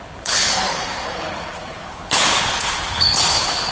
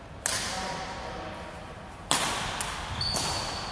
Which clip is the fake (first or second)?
first